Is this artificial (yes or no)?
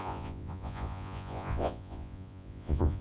yes